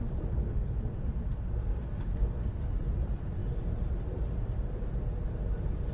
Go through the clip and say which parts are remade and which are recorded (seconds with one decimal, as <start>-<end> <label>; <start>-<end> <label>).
0.0-1.6 recorded; 1.6-2.8 remade; 2.8-5.9 recorded